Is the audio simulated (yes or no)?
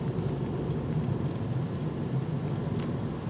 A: no